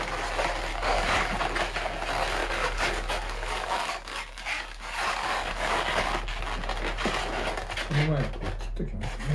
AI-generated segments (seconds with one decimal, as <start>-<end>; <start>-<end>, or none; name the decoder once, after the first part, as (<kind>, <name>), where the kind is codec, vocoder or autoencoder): 0.7-1.3 (codec, DAC); 2.4-6.4